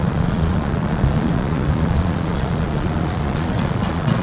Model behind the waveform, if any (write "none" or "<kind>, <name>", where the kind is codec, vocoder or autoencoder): vocoder, Vocos